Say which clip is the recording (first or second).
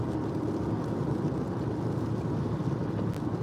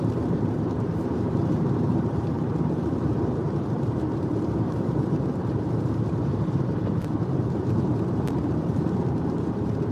first